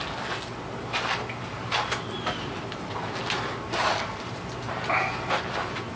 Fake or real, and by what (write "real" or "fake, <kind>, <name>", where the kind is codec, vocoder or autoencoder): real